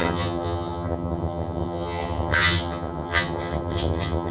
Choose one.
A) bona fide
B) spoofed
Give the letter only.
B